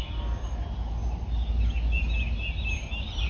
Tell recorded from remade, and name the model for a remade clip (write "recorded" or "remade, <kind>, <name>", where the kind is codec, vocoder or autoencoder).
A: recorded